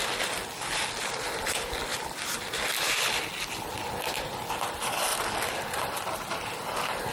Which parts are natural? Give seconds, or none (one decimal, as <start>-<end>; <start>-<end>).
0.0-5.1; 5.7-7.1